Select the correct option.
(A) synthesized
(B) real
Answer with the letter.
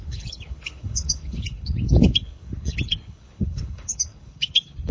A